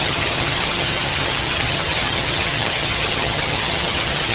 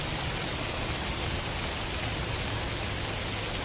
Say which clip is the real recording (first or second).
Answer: second